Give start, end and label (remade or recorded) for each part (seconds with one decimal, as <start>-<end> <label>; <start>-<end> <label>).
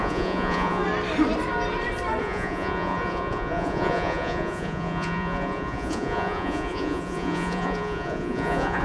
0.0-0.8 remade; 0.8-2.2 recorded; 2.2-8.8 remade